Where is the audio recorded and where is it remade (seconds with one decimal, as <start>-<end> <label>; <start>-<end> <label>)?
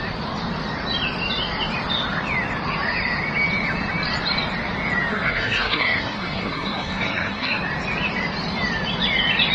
0.0-5.1 recorded; 5.1-7.6 remade; 7.6-9.5 recorded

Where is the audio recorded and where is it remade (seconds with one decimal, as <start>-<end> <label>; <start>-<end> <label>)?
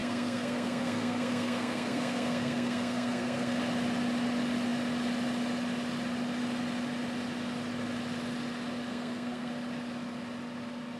0.0-3.6 remade; 3.6-8.9 recorded; 8.9-9.5 remade; 9.5-11.0 recorded